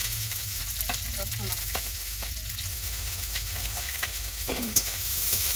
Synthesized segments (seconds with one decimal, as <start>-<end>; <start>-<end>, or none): 0.0-0.6; 1.6-2.3; 2.7-5.6